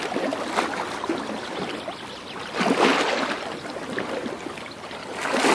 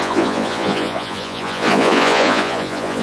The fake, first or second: second